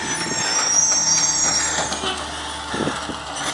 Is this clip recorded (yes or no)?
yes